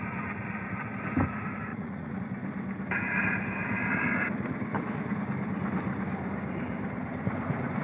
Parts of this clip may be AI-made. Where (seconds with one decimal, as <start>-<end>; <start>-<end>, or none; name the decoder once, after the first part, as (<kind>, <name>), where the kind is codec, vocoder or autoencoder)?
1.7-2.2 (vocoder, Vocos)